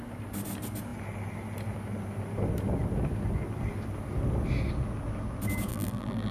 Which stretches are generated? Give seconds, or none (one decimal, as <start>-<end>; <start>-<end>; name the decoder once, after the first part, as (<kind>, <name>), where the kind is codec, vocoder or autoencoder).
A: 5.7-6.3 (vocoder, BigVGAN v2)